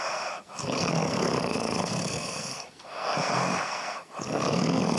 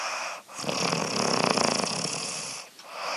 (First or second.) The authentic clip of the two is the second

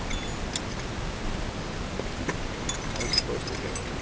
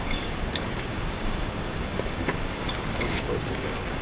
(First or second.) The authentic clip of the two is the first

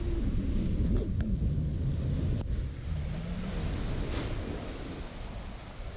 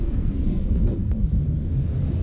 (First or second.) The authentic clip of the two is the first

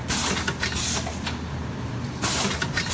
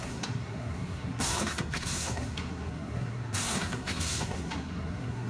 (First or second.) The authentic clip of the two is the first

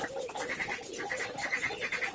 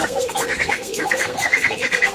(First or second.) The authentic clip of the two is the first